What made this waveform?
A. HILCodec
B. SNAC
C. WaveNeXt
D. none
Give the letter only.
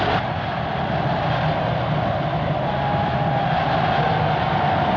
D